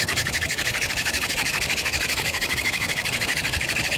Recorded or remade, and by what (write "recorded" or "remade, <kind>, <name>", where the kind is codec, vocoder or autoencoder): remade, codec, DAC